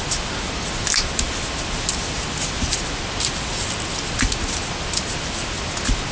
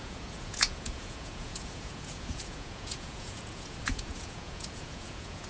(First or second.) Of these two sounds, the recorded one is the first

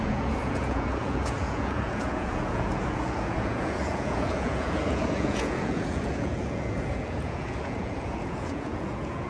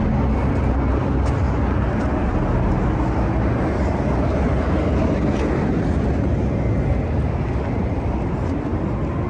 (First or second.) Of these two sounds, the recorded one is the second